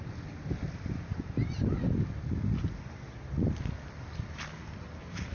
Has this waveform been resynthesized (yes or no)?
no